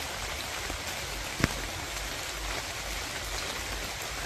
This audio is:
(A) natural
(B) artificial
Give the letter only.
A